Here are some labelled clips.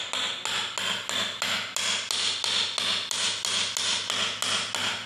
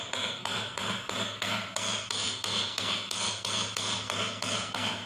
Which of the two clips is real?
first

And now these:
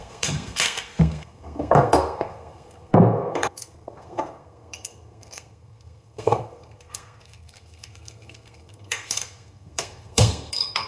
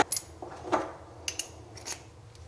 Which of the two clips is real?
second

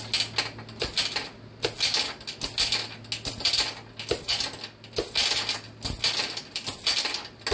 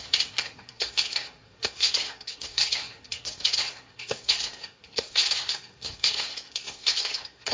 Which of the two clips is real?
first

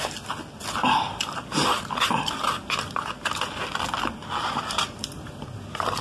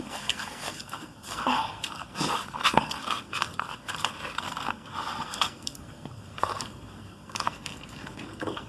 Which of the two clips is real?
first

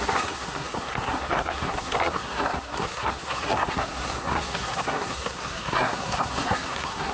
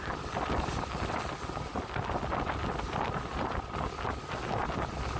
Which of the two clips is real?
second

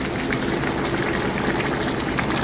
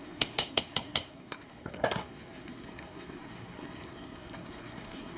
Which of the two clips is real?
first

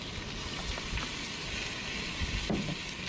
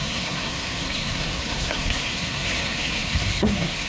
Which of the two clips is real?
first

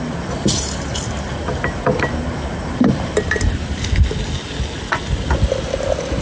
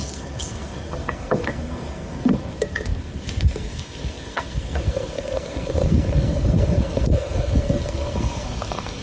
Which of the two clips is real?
first